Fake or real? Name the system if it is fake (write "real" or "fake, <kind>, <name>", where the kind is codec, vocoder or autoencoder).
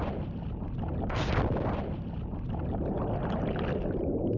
real